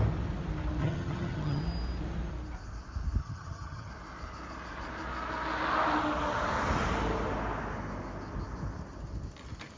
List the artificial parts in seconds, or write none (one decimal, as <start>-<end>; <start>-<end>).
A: 0.8-1.6; 3.2-3.9